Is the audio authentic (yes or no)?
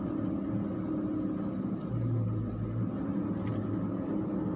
yes